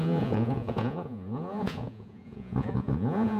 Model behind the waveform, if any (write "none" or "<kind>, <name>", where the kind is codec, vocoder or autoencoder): vocoder, Vocos